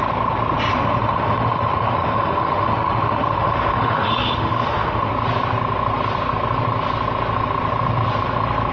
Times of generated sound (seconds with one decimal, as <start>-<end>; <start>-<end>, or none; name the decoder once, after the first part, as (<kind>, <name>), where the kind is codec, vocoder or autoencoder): 0.7-5.1 (autoencoder, DAC-VAE)